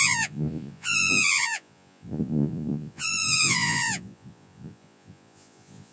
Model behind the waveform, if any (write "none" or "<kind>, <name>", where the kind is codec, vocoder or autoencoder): vocoder, Vocos